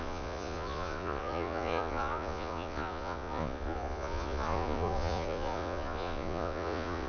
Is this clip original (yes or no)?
no